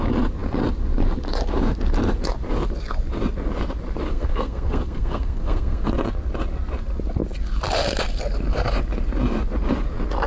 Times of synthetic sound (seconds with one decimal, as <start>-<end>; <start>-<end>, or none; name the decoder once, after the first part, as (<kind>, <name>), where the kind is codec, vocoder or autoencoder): 4.1-5.9 (codec, SNAC)